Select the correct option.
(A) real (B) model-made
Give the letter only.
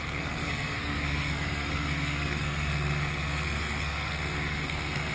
B